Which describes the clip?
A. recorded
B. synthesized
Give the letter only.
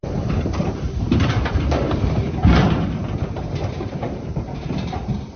B